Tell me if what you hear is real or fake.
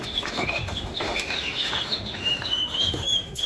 fake